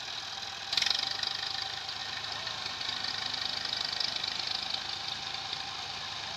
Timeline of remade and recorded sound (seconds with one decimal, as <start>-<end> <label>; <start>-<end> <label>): 0.0-6.4 recorded